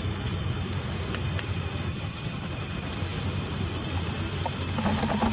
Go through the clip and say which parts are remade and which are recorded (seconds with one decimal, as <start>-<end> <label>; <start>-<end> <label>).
0.0-1.9 recorded; 1.9-2.5 remade; 2.5-5.3 recorded

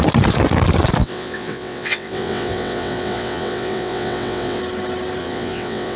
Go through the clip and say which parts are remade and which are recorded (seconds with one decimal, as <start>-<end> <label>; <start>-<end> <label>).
0.0-1.0 recorded; 1.0-4.6 remade; 4.6-5.2 recorded; 5.2-6.0 remade

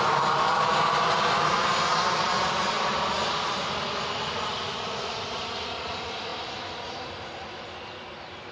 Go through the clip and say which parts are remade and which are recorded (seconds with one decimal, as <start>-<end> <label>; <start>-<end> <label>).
0.0-8.5 recorded